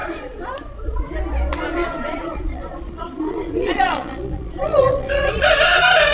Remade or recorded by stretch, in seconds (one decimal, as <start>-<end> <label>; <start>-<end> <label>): 0.0-1.0 remade; 1.0-1.8 recorded; 1.8-5.5 remade; 5.5-6.1 recorded